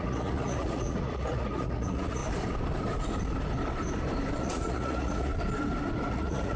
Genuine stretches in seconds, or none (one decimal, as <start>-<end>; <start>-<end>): 2.2-4.4; 5.3-6.1